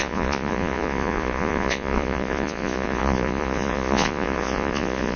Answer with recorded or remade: remade